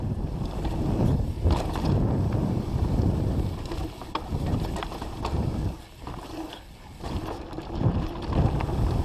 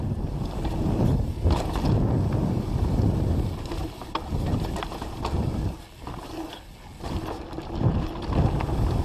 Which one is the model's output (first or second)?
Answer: first